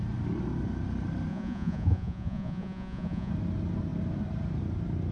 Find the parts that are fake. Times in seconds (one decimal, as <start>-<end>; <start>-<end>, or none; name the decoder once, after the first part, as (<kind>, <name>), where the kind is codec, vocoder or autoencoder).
1.3-3.3 (vocoder, Vocos)